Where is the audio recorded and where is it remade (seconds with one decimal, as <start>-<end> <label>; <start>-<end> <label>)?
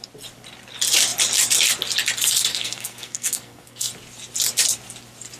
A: 0.0-2.5 recorded; 2.5-3.9 remade; 3.9-5.4 recorded